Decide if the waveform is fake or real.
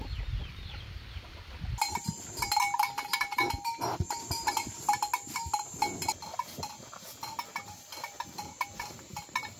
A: real